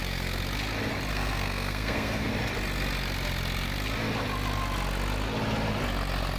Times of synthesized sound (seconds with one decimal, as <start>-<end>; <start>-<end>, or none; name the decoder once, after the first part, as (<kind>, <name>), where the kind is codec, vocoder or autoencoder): 0.0-0.4 (codec, SNAC); 1.1-2.3